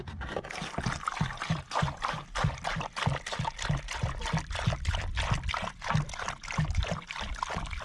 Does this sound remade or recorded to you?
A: recorded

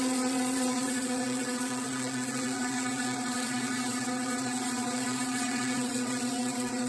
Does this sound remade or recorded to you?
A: remade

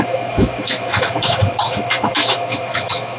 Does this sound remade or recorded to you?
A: remade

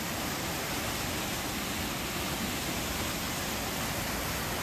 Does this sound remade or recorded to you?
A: recorded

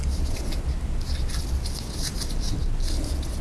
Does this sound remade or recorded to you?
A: recorded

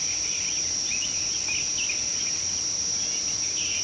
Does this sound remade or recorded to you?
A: recorded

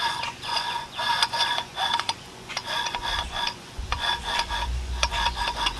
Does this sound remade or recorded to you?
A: remade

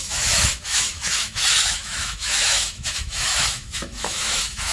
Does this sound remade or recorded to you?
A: remade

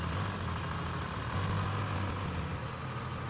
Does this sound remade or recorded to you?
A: recorded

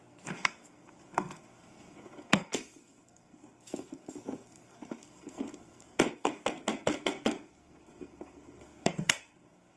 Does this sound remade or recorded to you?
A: remade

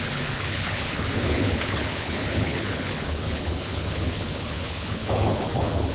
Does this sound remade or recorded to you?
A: remade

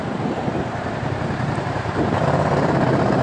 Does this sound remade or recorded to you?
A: remade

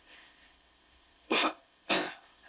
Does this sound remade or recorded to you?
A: remade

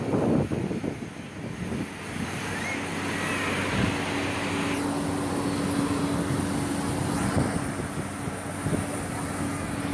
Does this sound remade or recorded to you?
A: recorded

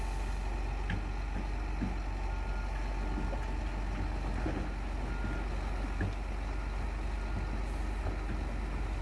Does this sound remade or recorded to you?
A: recorded